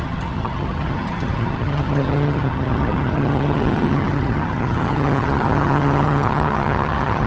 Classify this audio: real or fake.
fake